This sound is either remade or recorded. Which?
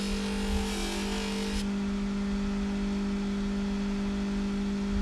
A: recorded